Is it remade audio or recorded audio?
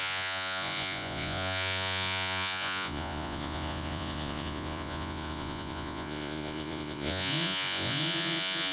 remade